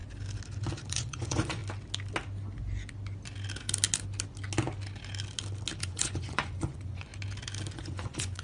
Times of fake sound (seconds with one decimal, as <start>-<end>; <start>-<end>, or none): 0.9-1.6; 5.8-7.1; 7.7-8.4